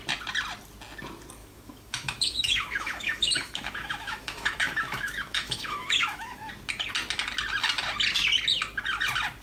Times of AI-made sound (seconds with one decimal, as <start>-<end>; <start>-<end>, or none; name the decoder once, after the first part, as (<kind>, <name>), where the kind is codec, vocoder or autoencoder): 1.4-6.5 (autoencoder, DAC-VAE)